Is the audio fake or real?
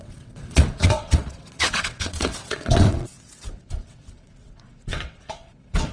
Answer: fake